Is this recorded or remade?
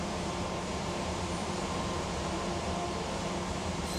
remade